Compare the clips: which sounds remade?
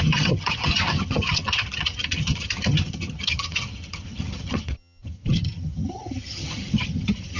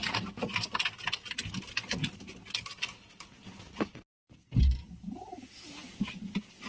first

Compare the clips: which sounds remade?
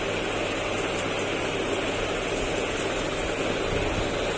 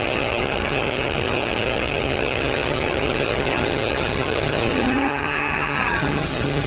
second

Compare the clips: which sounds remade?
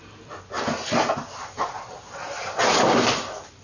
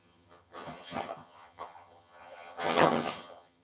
second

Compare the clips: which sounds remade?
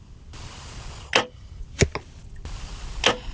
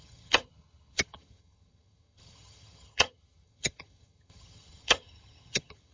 second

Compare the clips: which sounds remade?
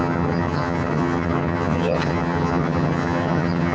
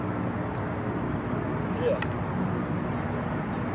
first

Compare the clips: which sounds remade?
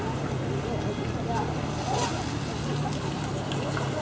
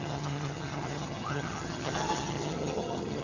second